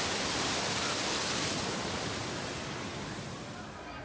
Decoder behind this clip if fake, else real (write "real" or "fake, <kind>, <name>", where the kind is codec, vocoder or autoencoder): real